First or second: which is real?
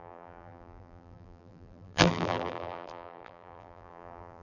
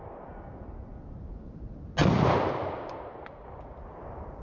second